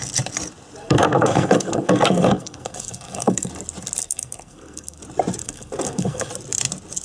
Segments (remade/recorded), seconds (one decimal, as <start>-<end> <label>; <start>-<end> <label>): 0.0-0.8 recorded; 0.8-3.5 remade; 3.5-4.0 recorded; 4.0-5.0 remade; 5.0-5.4 recorded; 5.4-6.3 remade; 6.3-7.0 recorded